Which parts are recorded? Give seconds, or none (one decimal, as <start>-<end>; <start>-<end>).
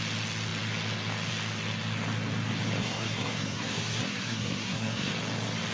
0.0-2.8; 5.1-5.7